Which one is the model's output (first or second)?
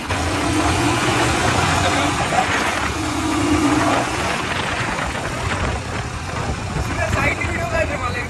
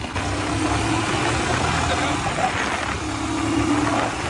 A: first